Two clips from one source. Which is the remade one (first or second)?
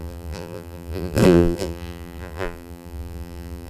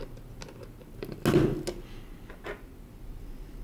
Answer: first